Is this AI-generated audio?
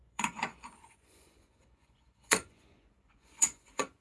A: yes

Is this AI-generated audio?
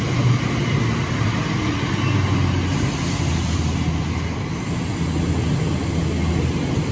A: no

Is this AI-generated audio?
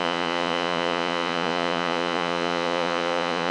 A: yes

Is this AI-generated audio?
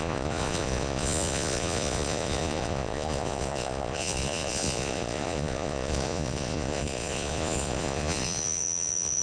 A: yes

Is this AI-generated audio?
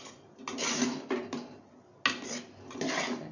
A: no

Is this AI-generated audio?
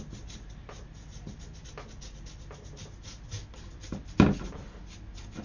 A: no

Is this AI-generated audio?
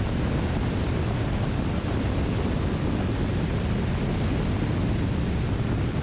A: no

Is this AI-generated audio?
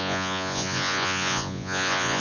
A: yes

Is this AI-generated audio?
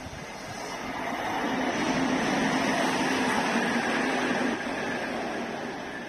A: no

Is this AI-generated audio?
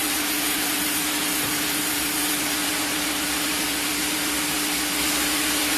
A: no